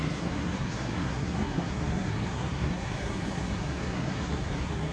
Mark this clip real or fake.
fake